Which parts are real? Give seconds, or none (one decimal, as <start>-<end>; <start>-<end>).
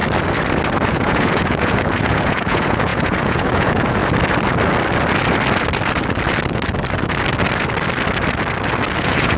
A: 0.0-0.9; 4.0-9.0